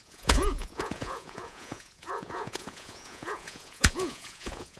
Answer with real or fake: fake